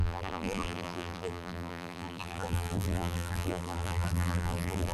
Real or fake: fake